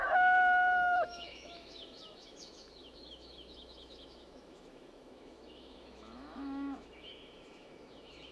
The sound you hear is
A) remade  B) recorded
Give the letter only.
A